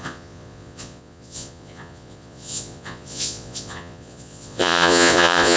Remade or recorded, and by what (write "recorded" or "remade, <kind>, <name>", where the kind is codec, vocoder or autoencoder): remade, vocoder, Vocos